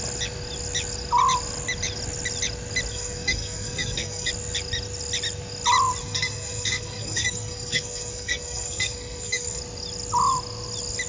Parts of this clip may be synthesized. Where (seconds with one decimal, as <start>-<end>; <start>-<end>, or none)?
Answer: 2.9-4.3; 6.0-9.6